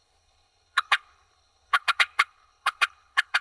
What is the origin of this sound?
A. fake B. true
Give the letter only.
A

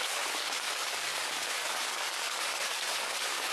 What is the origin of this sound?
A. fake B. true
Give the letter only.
A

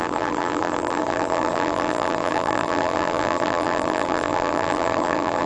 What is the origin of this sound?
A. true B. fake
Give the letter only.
B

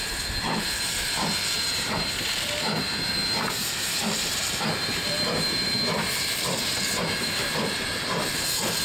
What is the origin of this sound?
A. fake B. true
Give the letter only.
A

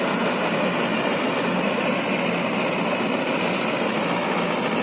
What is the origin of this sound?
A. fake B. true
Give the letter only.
B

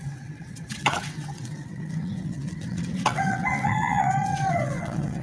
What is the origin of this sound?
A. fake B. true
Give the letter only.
A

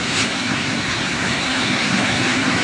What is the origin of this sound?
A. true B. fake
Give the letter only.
B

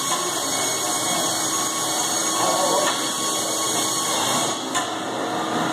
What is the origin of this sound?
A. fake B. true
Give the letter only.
B